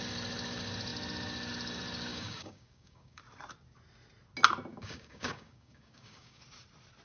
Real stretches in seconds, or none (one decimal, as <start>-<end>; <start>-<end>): 0.0-2.1; 3.2-4.7; 6.4-7.0